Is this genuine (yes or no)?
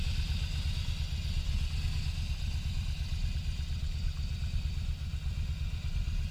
yes